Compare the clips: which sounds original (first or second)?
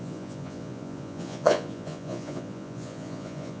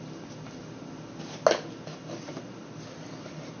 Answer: second